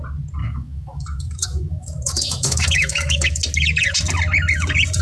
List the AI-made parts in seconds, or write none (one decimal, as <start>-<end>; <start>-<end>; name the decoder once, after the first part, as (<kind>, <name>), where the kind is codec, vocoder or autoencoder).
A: 0.4-3.4 (autoencoder, DAC-VAE)